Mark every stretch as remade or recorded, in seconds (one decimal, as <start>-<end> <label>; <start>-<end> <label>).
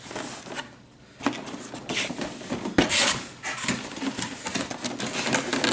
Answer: 0.0-5.7 recorded